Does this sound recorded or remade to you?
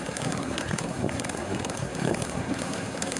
remade